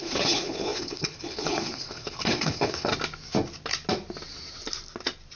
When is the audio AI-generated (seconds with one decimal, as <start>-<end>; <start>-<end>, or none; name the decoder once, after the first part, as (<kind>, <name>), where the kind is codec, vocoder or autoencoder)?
0.0-2.9 (codec, HILCodec)